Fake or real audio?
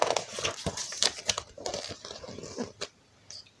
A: real